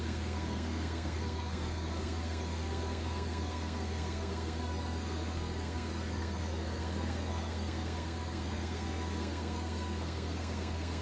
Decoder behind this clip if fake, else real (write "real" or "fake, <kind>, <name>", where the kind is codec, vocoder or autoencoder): fake, codec, SNAC